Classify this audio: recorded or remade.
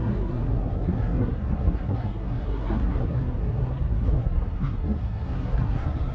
remade